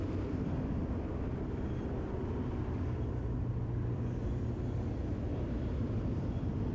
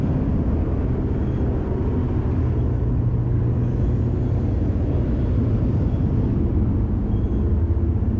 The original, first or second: second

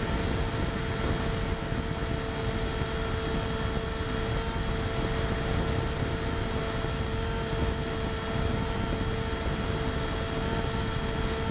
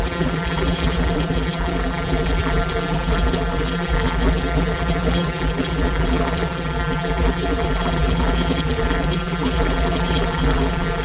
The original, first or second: first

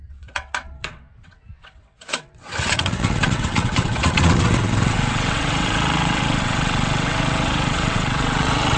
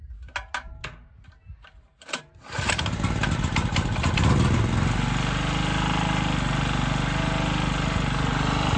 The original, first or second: second